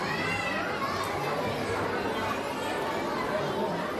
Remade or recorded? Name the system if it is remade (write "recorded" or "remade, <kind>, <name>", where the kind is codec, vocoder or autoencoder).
recorded